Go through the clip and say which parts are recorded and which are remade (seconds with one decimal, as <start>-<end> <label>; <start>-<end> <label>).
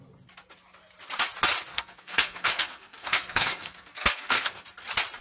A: 0.0-1.7 recorded; 1.7-4.6 remade; 4.6-5.2 recorded